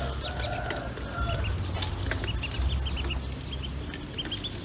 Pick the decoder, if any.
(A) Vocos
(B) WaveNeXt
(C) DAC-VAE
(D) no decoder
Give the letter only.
D